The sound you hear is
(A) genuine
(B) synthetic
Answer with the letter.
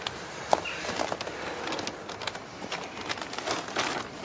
A